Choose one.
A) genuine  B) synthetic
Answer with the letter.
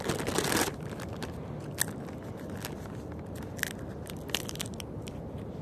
A